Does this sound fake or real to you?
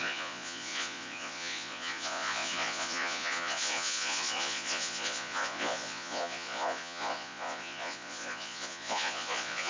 fake